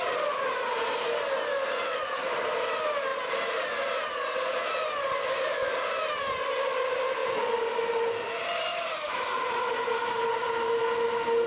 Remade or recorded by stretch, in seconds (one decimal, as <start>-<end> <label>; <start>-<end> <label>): 0.0-8.7 recorded; 8.7-9.6 remade; 9.6-11.5 recorded